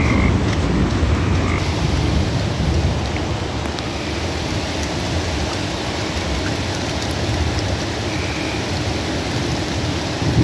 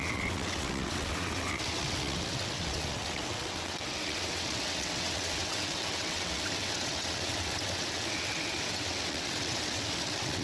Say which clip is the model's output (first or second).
second